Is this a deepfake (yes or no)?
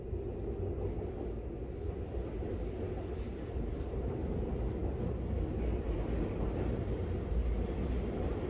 no